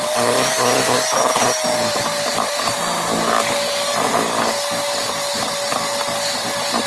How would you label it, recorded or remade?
recorded